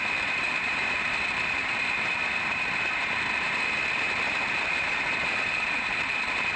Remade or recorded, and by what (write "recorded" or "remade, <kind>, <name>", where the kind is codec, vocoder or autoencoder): remade, vocoder, BigVGAN v2